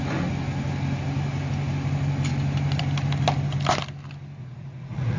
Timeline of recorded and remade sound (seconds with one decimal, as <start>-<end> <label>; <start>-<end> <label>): 0.0-4.4 recorded; 4.4-5.2 remade